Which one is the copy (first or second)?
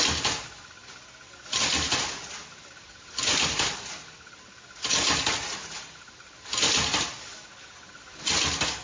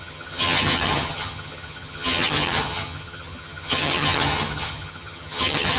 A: second